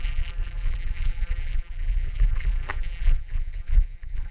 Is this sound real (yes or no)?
no